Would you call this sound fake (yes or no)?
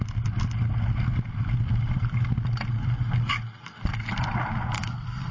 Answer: no